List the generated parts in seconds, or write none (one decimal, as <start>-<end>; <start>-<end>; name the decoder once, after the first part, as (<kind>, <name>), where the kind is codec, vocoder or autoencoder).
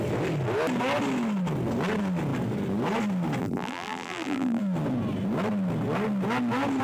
3.4-4.6 (vocoder, BigVGAN v2)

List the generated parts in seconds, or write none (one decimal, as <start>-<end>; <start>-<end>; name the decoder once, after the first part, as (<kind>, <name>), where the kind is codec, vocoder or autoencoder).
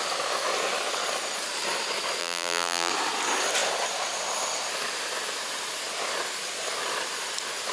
2.2-2.9 (vocoder, BigVGAN v2)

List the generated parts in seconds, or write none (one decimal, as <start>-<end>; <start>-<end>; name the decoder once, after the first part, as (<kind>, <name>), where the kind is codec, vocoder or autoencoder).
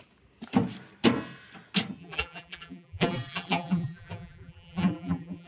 2.0-5.5 (vocoder, BigVGAN v2)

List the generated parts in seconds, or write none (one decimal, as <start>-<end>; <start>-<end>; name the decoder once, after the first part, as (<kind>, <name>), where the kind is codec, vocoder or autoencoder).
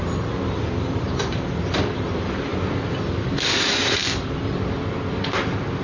0.0-4.0 (vocoder, BigVGAN v2); 5.1-5.8